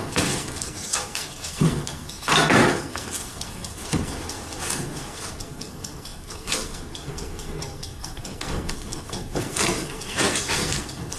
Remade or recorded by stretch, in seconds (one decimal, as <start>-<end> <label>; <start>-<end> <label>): 0.0-11.2 remade